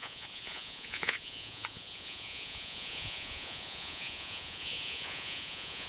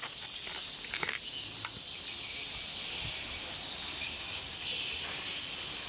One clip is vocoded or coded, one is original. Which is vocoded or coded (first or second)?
first